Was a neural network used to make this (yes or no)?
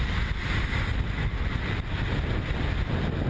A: no